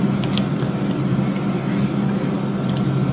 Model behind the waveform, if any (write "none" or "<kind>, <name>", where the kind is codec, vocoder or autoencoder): none